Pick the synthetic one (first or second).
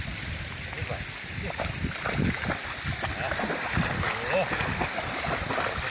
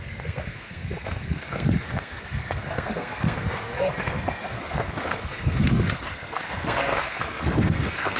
second